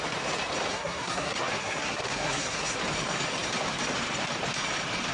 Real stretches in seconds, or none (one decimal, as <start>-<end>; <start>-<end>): 0.0-0.7; 2.8-5.1